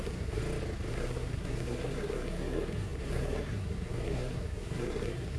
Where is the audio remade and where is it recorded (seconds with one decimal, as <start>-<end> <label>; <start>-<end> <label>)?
0.0-0.4 remade; 0.4-0.9 recorded; 0.9-5.4 remade